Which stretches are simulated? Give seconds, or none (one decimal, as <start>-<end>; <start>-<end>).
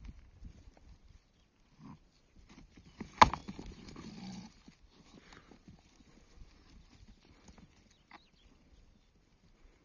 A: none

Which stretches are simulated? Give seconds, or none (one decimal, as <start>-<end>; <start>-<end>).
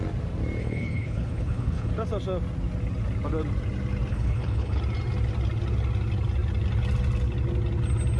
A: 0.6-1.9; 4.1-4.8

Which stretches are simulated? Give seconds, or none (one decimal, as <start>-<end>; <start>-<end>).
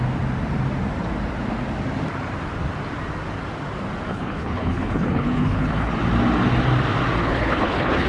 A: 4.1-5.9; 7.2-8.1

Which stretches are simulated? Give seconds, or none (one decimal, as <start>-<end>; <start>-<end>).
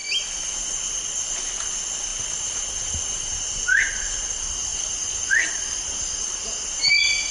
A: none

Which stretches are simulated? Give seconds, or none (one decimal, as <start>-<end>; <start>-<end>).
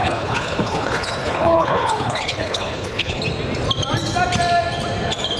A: 0.0-3.2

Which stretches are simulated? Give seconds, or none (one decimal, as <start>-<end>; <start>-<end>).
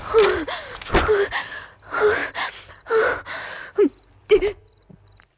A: none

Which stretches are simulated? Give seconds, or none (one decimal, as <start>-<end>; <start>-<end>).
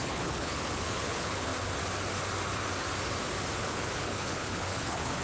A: 0.0-1.5; 3.6-5.2